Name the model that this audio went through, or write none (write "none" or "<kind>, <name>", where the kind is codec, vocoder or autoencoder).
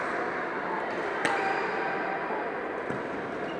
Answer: none